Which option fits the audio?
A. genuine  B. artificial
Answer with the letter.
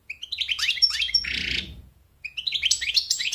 B